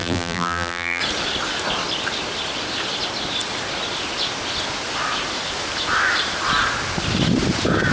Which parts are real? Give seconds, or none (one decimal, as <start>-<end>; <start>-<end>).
1.0-7.9